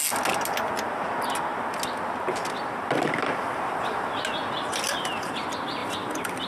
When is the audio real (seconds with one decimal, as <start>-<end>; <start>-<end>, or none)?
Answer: 0.0-5.8